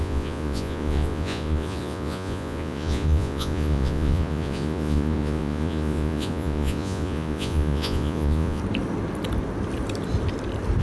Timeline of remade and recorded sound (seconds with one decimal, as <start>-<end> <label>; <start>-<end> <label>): 0.0-8.6 remade; 8.6-10.8 recorded